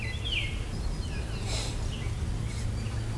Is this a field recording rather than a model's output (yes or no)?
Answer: yes